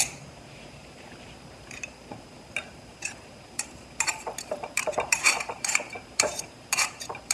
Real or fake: fake